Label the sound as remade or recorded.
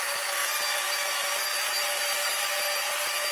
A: recorded